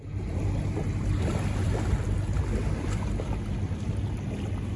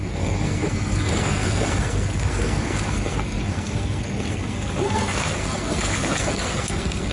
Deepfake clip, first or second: second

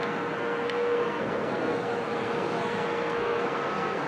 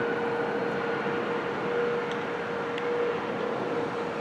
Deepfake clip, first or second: first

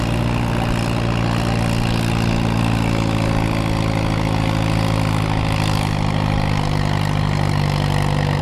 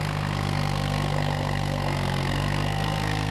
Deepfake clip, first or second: second